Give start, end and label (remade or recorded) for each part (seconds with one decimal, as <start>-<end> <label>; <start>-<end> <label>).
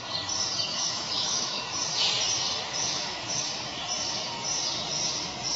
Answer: 0.0-0.7 recorded; 0.7-1.6 remade; 1.6-2.8 recorded; 2.8-3.5 remade; 3.5-5.6 recorded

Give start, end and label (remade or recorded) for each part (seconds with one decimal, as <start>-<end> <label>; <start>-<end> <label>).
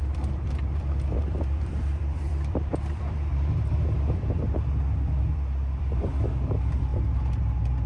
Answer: 0.0-6.9 remade; 6.9-7.9 recorded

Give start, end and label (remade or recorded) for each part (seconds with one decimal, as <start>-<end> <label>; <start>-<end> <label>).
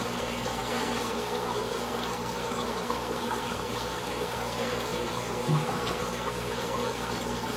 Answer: 0.0-7.6 remade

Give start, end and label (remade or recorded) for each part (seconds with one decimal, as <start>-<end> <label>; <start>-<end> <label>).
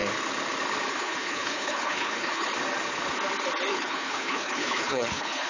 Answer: 0.0-0.9 recorded; 0.9-2.5 remade; 2.5-3.7 recorded; 3.7-5.5 remade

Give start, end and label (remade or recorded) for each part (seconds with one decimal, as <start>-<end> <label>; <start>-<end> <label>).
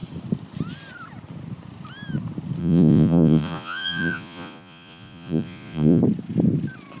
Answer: 0.0-2.6 recorded; 2.6-6.0 remade; 6.0-7.0 recorded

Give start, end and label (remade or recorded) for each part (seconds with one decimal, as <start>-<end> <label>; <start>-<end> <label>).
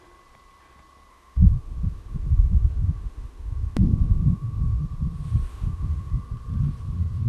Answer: 0.0-1.1 recorded; 1.1-4.8 remade; 4.8-5.5 recorded; 5.5-6.1 remade; 6.1-7.3 recorded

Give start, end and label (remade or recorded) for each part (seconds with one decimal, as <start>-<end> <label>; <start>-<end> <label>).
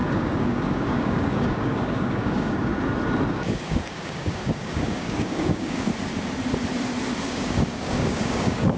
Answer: 0.0-2.7 remade; 2.7-3.3 recorded; 3.3-5.9 remade; 5.9-7.2 recorded; 7.2-8.8 remade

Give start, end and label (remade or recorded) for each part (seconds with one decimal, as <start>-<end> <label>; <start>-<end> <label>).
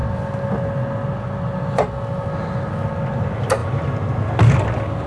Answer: 0.0-5.1 recorded